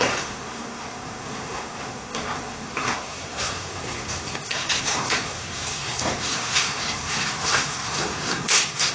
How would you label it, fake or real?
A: fake